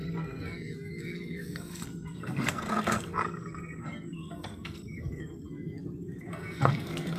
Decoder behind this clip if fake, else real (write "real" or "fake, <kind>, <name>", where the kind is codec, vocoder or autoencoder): fake, codec, SNAC